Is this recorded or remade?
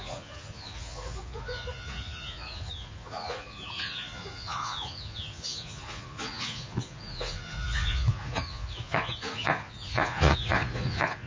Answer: remade